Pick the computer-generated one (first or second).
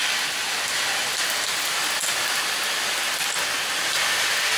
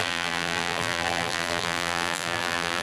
second